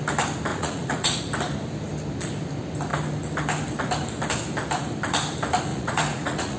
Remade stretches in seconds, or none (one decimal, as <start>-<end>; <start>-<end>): 0.5-1.2; 5.7-6.6